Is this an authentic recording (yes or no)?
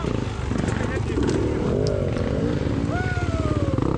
yes